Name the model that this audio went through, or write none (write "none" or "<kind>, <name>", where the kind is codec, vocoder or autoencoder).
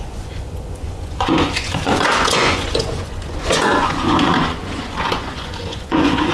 vocoder, Vocos